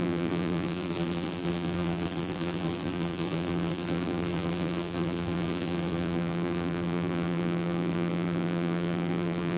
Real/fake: fake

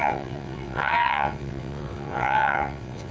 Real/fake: fake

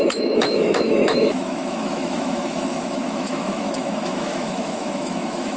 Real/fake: fake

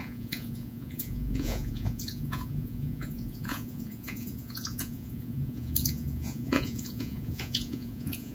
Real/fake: fake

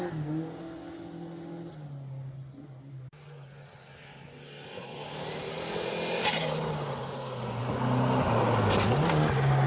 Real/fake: real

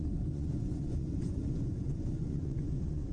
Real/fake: fake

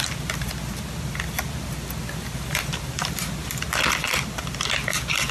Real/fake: real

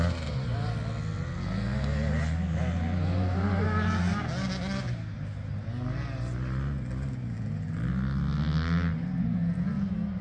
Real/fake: real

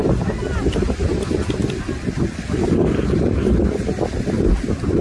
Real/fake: real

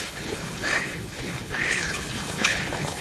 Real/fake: fake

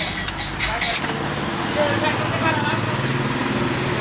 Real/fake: real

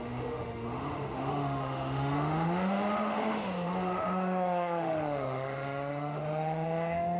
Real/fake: fake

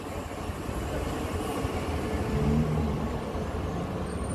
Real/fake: real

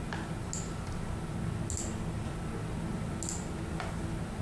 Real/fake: real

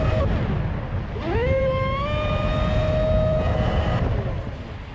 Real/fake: real